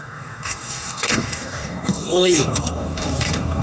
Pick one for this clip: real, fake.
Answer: fake